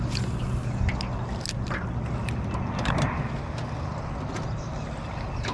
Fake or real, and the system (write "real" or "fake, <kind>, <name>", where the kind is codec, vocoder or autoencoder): real